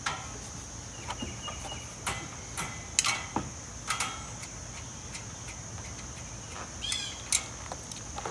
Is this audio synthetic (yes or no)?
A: no